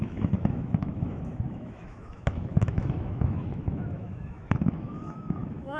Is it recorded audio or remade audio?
remade